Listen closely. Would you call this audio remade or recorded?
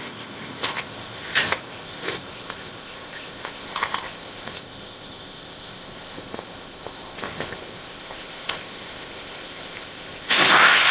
remade